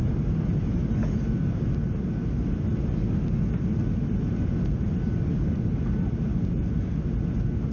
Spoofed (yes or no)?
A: no